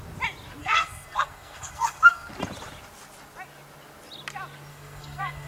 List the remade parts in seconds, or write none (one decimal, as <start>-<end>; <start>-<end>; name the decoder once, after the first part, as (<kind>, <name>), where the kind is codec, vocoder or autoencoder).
0.6-2.3 (codec, SNAC); 4.7-5.5